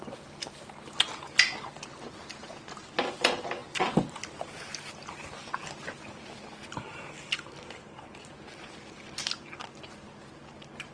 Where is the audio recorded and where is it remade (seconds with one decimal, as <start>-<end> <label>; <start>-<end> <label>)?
0.0-10.9 recorded